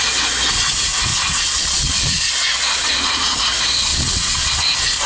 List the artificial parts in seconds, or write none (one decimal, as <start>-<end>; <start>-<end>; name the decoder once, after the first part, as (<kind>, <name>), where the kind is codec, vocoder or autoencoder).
1.1-3.4 (vocoder, Vocos); 3.9-4.6